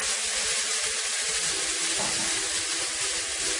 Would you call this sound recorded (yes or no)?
yes